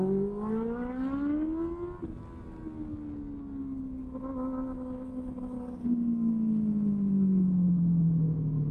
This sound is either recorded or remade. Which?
recorded